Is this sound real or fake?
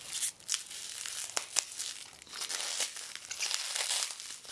real